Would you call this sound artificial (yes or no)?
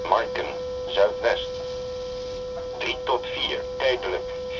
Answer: no